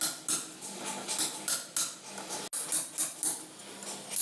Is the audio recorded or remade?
recorded